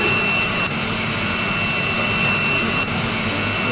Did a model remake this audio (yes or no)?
no